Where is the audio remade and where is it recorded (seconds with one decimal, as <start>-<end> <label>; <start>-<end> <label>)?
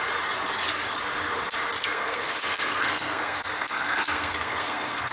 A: 0.0-1.8 recorded; 1.8-5.1 remade